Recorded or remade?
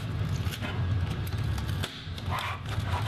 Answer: recorded